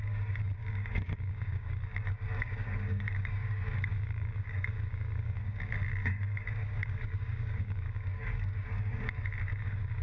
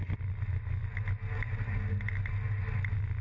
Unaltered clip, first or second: second